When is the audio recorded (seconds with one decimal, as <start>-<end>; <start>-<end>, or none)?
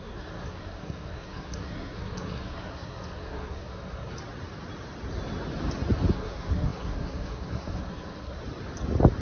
4.1-6.1; 8.4-9.2